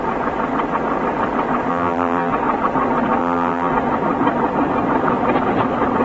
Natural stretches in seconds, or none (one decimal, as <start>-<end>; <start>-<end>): 0.0-1.7; 2.3-3.2; 3.7-6.0